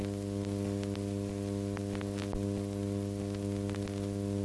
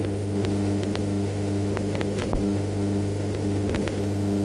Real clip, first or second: first